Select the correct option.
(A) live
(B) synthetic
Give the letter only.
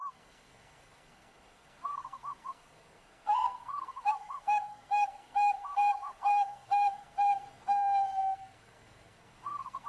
B